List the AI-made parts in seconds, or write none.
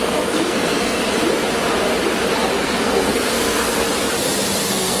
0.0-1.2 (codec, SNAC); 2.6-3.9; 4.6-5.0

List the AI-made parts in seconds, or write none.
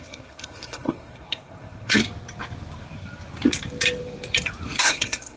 0.0-2.0 (codec, SNAC); 4.8-5.4